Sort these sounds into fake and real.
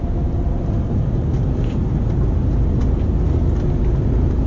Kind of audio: real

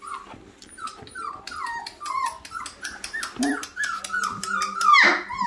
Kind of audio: real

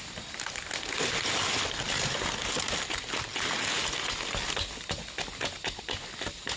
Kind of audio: real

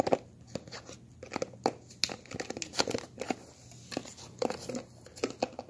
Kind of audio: real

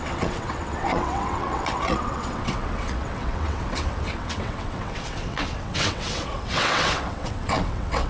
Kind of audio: fake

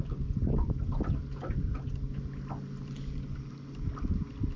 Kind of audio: real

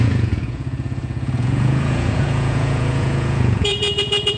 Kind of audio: fake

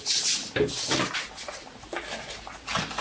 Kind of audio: real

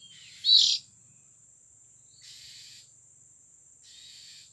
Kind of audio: real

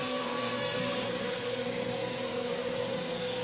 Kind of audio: fake